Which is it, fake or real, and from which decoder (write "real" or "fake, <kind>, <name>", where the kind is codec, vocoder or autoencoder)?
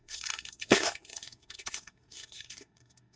fake, codec, SNAC